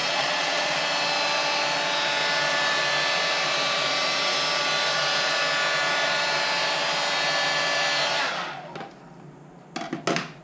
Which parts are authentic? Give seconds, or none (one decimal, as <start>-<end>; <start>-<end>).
0.8-10.4